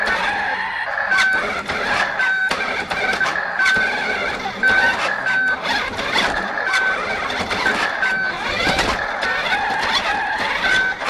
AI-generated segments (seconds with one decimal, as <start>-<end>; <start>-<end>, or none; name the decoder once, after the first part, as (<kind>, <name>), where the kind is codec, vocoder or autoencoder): none